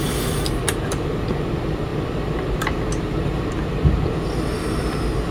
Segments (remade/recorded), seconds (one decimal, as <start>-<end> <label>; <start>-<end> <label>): 0.0-5.3 recorded

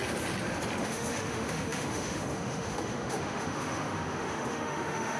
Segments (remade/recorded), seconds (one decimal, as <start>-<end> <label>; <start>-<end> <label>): 0.0-0.8 recorded; 0.8-5.2 remade